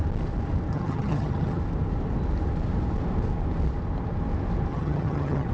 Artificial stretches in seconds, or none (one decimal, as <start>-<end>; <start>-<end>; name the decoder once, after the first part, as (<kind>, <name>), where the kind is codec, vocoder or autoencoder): 0.7-1.6 (vocoder, HiFi-GAN); 4.7-5.5